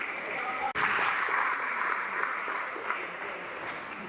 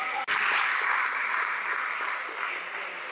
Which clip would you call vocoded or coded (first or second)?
first